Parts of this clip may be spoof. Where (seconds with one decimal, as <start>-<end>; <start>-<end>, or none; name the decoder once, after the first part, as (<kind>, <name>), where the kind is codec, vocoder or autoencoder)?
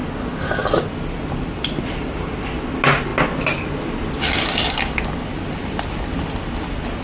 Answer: none